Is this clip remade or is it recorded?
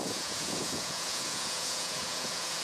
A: remade